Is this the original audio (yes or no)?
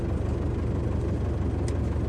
yes